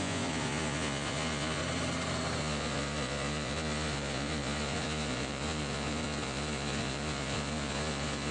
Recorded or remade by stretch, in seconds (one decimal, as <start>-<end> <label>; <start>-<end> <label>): 0.0-1.6 remade; 1.6-2.4 recorded; 2.4-8.3 remade